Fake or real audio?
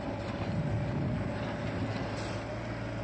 real